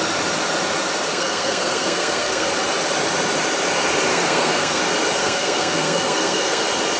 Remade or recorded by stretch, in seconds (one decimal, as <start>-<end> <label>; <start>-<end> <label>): 0.0-1.1 recorded; 1.1-2.5 remade; 2.5-4.1 recorded; 4.1-4.8 remade; 4.8-5.2 recorded; 5.2-6.6 remade; 6.6-7.0 recorded